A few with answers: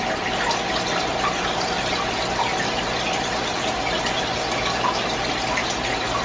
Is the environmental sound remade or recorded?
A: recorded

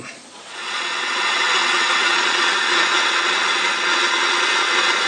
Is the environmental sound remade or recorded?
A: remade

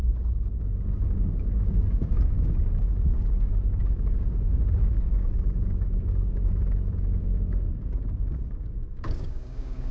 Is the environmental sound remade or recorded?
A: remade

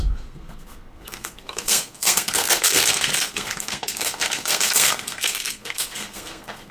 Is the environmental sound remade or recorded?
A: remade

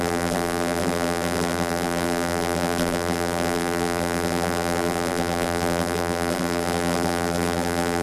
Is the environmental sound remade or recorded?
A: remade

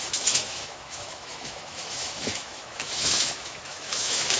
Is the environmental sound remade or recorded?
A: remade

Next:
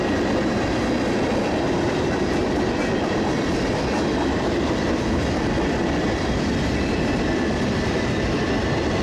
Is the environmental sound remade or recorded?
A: recorded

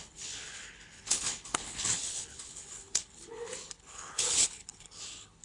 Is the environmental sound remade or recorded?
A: remade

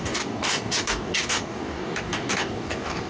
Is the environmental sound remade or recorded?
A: remade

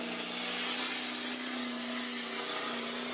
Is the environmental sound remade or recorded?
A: recorded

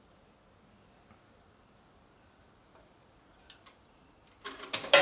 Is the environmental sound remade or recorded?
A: recorded